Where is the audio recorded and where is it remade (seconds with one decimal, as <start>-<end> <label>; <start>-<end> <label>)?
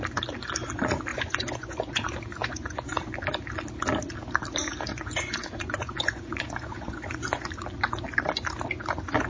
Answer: 0.0-1.1 recorded; 1.1-2.9 remade; 2.9-4.9 recorded; 4.9-7.5 remade; 7.5-9.3 recorded